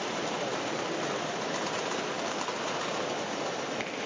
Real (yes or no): yes